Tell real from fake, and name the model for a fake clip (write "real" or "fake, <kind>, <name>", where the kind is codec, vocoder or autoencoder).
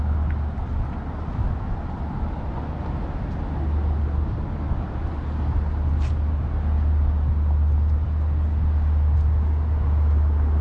real